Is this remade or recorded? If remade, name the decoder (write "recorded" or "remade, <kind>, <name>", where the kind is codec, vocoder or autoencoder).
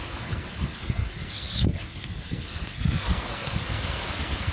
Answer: remade, codec, SNAC